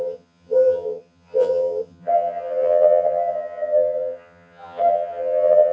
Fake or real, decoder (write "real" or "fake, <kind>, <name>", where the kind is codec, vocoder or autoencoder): fake, vocoder, HiFi-GAN